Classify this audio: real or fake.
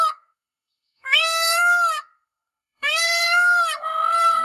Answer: fake